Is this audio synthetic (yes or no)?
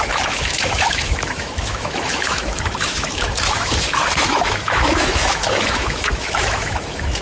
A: yes